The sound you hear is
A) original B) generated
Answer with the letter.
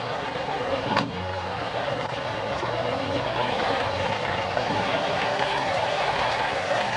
B